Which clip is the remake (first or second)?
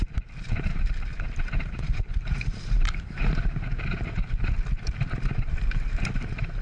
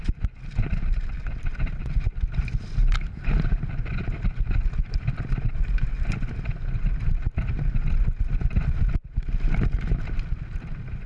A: first